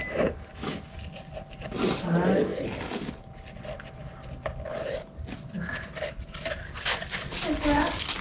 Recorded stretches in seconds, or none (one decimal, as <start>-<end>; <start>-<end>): 0.0-8.2